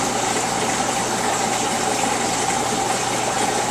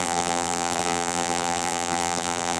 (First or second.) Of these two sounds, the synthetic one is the second